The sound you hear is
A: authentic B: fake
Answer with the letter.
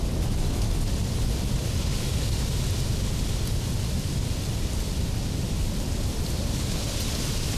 A